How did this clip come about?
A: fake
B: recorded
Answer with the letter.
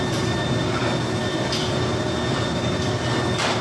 B